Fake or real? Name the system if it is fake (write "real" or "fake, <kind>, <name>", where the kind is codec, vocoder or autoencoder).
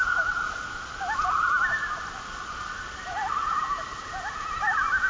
real